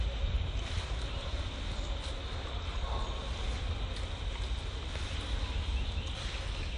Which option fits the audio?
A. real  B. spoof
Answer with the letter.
A